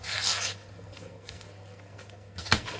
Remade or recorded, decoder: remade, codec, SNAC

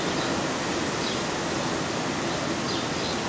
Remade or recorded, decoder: recorded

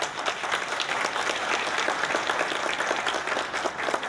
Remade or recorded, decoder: recorded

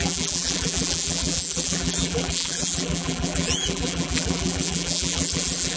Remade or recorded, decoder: remade, vocoder, BigVGAN v2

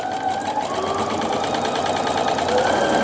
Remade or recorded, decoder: recorded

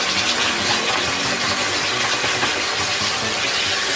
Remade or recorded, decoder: recorded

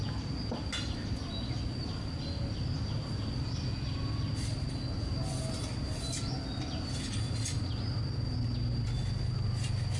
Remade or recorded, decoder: recorded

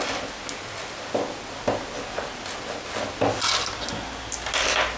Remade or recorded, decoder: recorded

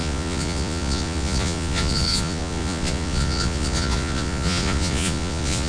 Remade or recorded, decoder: remade, vocoder, Vocos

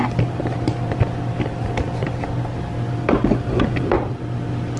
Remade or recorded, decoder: recorded